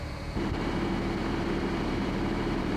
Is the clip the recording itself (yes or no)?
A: no